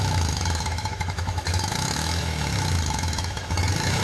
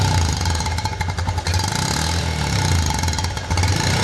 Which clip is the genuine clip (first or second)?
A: second